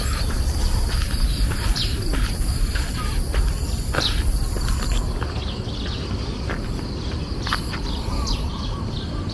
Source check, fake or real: real